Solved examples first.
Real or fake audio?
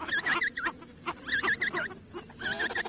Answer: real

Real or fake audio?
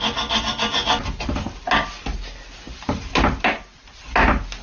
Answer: real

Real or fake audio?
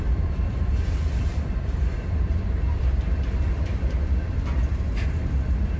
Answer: fake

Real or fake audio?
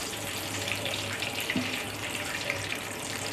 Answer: fake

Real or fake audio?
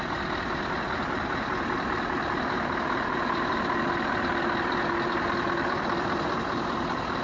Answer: real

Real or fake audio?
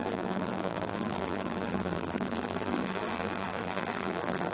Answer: fake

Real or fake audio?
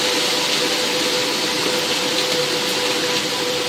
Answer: real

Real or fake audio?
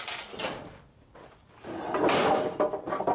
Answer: real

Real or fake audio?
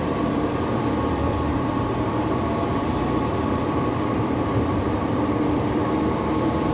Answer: fake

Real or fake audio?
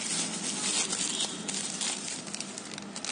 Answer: real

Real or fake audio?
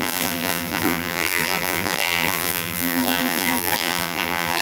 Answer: fake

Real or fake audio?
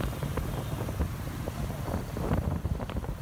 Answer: fake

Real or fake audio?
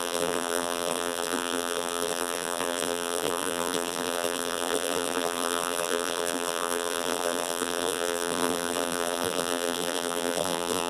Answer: fake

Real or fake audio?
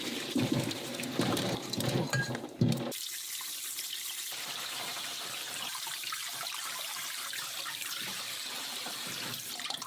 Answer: fake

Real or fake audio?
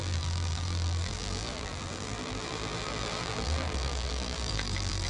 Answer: fake